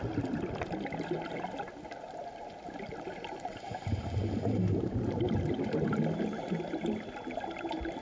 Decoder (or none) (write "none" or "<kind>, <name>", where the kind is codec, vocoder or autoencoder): none